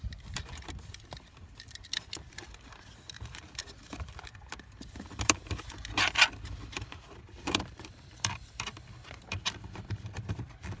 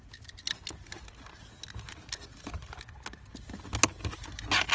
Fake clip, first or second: first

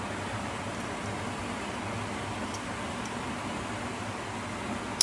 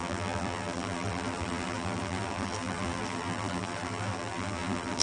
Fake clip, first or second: second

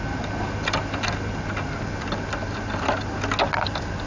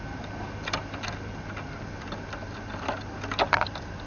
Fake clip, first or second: second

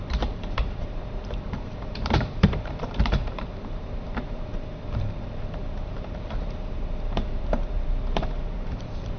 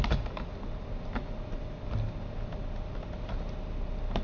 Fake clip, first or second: first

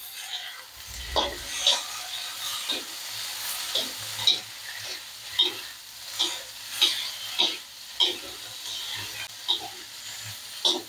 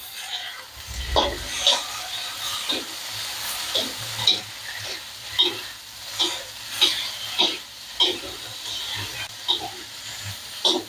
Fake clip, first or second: second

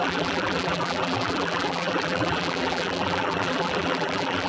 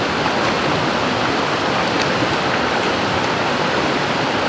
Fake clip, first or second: first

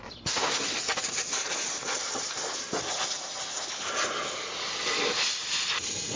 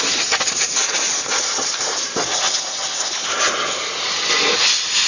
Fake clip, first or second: first